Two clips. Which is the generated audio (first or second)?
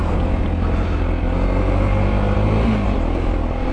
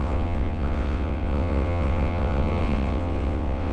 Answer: second